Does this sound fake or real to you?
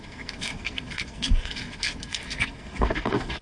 fake